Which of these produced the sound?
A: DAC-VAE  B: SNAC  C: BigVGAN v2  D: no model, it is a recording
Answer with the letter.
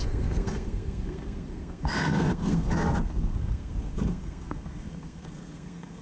B